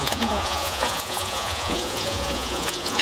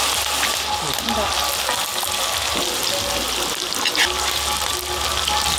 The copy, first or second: first